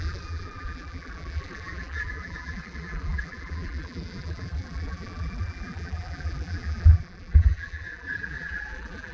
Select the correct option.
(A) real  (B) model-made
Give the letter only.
B